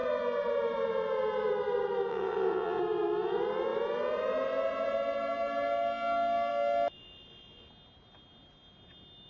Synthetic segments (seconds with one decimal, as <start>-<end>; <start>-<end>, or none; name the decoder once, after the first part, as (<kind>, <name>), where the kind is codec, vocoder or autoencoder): 2.1-2.8 (vocoder, WaveNeXt)